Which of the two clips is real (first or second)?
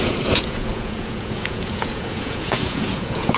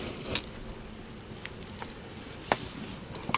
second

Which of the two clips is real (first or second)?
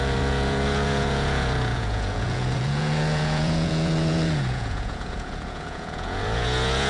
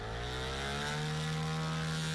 second